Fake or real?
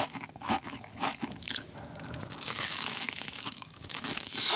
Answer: fake